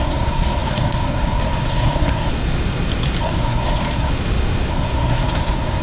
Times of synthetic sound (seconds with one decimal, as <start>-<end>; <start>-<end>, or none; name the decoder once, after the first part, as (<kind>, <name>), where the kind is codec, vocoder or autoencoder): 0.0-2.3 (codec, SNAC); 3.2-4.1; 4.7-5.8